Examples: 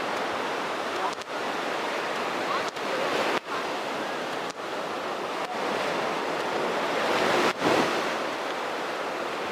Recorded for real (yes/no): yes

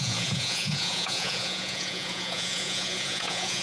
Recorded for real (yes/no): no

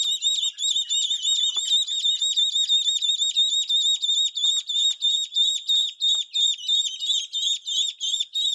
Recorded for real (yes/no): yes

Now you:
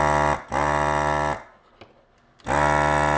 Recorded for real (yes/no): yes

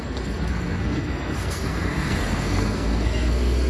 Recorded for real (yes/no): no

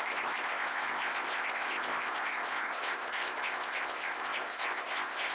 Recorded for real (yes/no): no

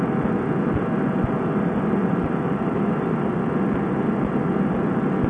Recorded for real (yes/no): yes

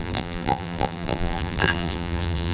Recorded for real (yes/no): no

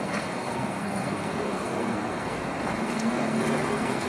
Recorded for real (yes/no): no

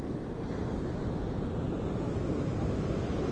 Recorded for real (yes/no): yes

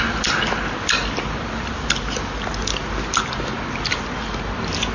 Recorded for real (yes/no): yes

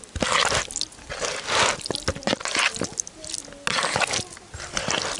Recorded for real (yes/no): yes